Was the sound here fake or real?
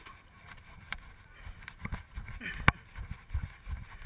real